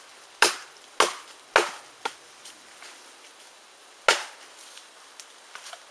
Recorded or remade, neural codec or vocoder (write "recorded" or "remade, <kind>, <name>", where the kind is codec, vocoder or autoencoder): recorded